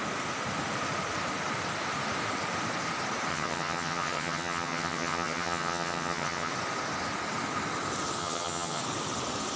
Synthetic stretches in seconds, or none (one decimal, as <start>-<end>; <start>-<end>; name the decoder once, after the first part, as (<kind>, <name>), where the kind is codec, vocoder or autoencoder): 3.3-6.5 (vocoder, HiFi-GAN); 8.2-8.8